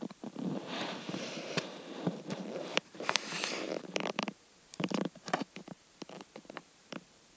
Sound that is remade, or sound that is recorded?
remade